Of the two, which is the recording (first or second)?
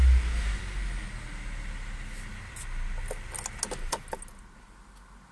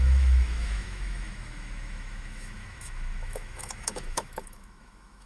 first